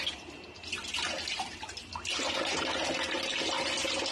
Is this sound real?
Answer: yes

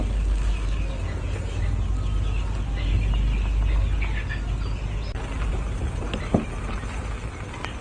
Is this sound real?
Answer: yes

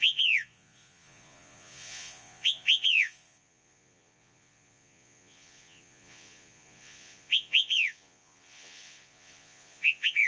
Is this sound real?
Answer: no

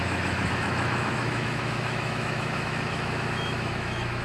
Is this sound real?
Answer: no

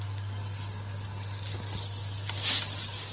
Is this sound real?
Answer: yes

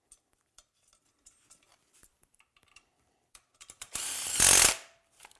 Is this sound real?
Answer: no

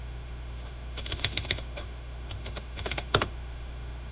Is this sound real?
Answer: no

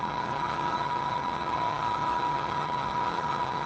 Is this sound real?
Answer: no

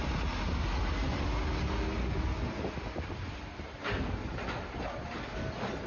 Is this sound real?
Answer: yes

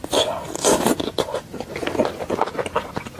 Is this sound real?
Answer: yes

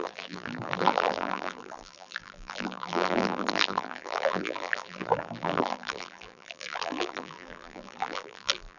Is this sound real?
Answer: no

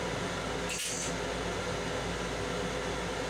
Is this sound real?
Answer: yes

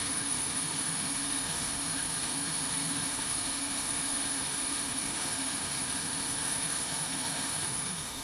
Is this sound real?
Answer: no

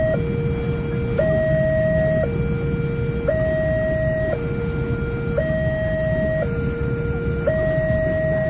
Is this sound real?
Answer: yes